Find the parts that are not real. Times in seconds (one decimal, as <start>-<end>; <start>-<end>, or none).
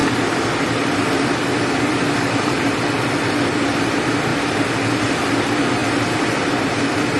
none